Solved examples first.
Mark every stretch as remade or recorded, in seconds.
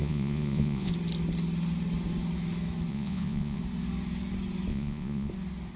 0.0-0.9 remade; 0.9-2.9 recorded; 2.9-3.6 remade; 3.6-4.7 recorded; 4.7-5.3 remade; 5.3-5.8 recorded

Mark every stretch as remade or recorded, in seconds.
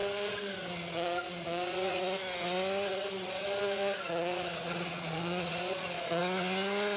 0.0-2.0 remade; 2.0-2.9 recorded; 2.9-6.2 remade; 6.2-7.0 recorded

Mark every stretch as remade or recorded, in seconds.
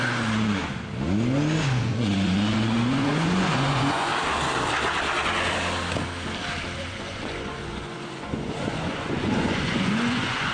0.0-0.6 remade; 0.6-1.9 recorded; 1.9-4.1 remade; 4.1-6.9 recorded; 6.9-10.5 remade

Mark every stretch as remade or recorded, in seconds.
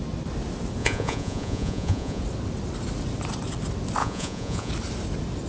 0.0-0.8 recorded; 0.8-2.2 remade; 2.2-4.0 recorded; 4.0-4.7 remade; 4.7-5.5 recorded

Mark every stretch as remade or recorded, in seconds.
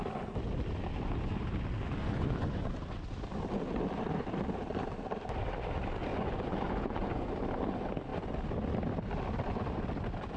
0.0-2.0 recorded; 2.0-2.7 remade; 2.7-6.1 recorded; 6.1-7.3 remade; 7.3-10.4 recorded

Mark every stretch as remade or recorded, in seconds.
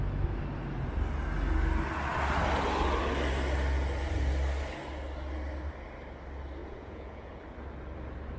0.0-6.6 recorded; 6.6-7.4 remade; 7.4-8.4 recorded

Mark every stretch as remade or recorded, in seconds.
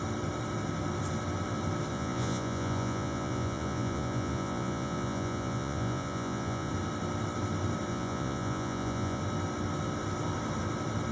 0.0-1.9 recorded; 1.9-6.7 remade; 6.7-7.9 recorded; 7.9-9.2 remade; 9.2-11.1 recorded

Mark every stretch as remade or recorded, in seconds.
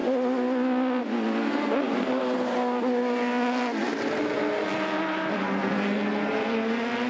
0.0-7.1 recorded